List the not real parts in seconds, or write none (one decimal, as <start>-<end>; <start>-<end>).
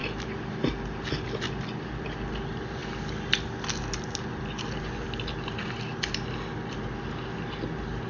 none